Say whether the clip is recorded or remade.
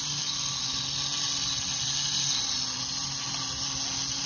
recorded